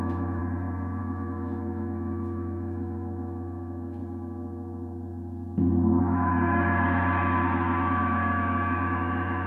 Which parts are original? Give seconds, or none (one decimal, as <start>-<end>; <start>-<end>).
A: 0.4-1.0; 4.0-6.0